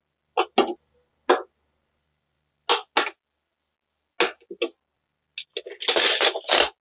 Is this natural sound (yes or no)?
yes